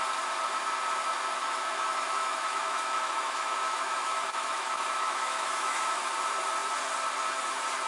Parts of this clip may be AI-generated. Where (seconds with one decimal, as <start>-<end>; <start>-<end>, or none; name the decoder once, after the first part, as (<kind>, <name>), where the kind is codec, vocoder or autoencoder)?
1.4-6.0 (autoencoder, DAC-VAE)